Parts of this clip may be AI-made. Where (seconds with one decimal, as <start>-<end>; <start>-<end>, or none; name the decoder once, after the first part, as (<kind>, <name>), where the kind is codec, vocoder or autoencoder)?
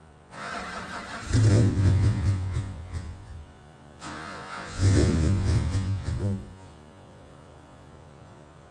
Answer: 0.0-0.5 (vocoder, Vocos); 1.5-8.7